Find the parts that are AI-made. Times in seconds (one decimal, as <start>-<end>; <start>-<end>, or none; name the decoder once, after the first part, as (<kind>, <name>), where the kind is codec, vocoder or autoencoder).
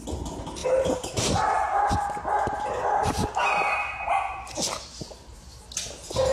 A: 0.6-1.9 (vocoder, BigVGAN v2)